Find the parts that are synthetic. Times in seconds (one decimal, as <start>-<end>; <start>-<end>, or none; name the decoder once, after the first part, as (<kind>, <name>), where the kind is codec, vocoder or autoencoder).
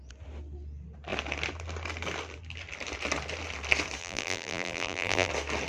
4.0-5.3 (vocoder, BigVGAN v2)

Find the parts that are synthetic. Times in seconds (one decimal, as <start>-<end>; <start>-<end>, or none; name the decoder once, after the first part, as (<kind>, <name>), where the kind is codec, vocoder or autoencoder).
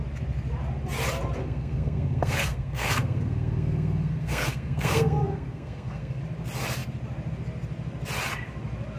1.4-6.2 (codec, SNAC)